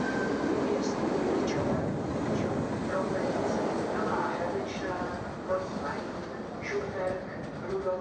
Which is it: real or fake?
real